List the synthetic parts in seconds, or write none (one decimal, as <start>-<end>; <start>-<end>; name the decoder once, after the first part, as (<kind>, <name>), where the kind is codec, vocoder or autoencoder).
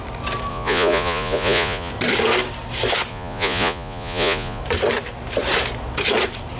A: 0.5-1.9 (vocoder, Vocos); 3.1-4.6